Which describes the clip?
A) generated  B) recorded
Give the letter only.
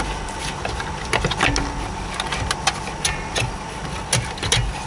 B